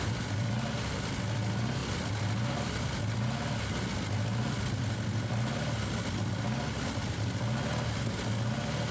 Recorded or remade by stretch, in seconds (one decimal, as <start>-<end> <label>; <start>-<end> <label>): 0.0-8.9 recorded

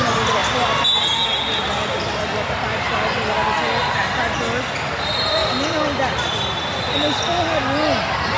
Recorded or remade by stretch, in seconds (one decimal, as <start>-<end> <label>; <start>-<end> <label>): 0.0-8.4 recorded

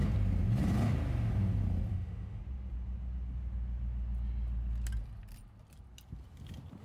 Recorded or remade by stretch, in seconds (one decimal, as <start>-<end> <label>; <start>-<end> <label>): 0.0-1.9 recorded; 1.9-2.4 remade; 2.4-6.8 recorded

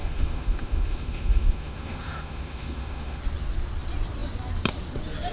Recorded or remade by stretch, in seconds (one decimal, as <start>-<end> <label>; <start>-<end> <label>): 0.0-3.2 remade; 3.2-5.3 recorded

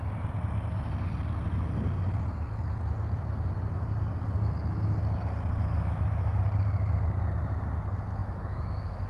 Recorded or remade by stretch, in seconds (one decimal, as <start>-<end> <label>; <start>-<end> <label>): 0.0-5.6 recorded; 5.6-6.4 remade; 6.4-8.2 recorded; 8.2-9.1 remade

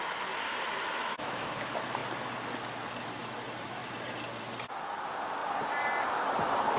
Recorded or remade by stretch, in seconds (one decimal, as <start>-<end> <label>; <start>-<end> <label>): 0.0-1.0 recorded; 1.0-1.6 remade; 1.6-6.8 recorded

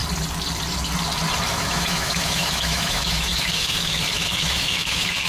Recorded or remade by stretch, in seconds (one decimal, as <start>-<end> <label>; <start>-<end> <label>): 0.0-1.5 recorded; 1.5-5.3 remade

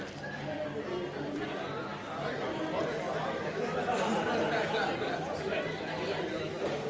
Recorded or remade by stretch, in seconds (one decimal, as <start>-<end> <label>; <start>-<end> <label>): 0.0-3.2 recorded; 3.2-4.0 remade; 4.0-6.9 recorded